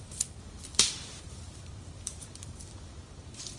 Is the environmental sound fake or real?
fake